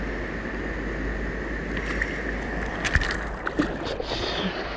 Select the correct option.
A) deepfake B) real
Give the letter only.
B